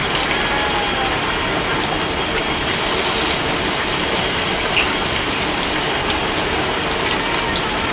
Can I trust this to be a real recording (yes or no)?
yes